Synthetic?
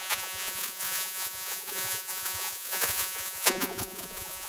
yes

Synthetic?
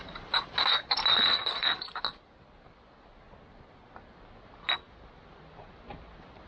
no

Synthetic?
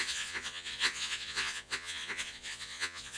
yes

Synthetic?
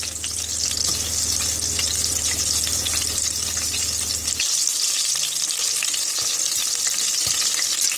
no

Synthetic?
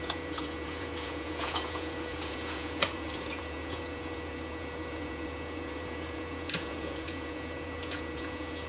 yes